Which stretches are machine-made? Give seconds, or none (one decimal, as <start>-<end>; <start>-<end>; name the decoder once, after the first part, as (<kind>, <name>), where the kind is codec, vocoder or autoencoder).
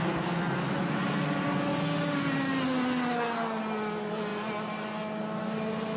none